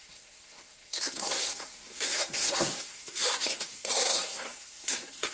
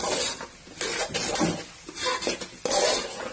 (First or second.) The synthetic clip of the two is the first